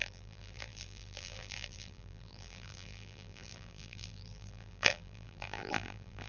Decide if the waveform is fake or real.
fake